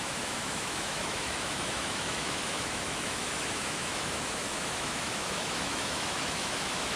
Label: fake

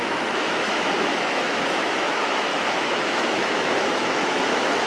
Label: fake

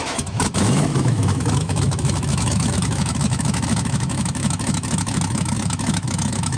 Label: fake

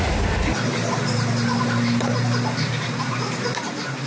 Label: real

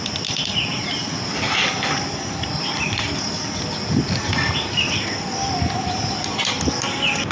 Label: real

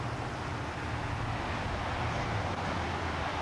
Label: real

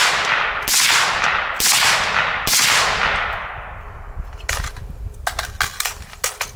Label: real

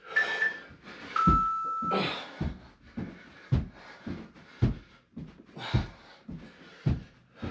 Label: real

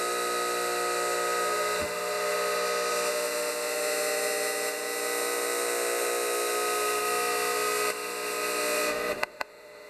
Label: fake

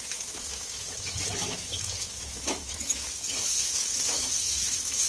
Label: fake